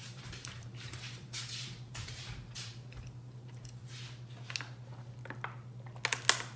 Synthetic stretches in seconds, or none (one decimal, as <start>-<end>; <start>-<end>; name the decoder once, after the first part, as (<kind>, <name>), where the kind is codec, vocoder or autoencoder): 0.0-4.0 (vocoder, BigVGAN v2)